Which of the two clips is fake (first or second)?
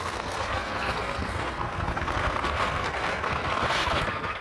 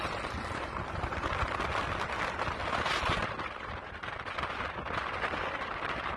first